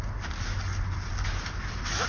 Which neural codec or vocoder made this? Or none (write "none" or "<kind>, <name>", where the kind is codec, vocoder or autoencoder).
none